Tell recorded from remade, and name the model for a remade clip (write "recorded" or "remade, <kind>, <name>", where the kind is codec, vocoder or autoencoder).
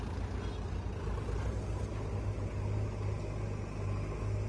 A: recorded